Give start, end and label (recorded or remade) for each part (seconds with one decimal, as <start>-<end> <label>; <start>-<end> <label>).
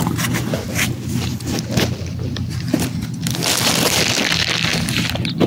0.0-5.5 recorded